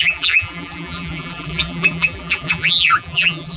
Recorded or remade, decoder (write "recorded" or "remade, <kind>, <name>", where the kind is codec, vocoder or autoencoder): remade, vocoder, BigVGAN v2